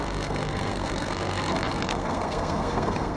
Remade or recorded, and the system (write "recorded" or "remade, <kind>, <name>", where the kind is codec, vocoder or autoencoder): remade, codec, SNAC